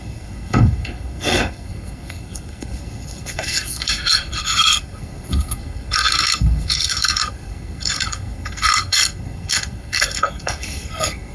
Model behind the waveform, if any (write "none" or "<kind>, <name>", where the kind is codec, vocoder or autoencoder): codec, SNAC